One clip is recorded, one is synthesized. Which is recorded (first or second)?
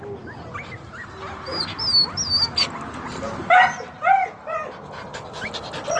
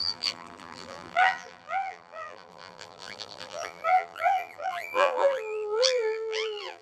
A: first